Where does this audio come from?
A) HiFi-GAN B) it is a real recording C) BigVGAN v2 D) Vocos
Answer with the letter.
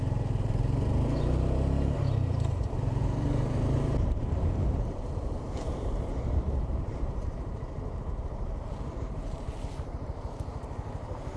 C